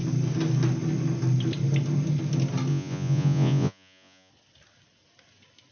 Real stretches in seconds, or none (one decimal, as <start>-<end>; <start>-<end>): 0.0-2.7; 4.3-5.7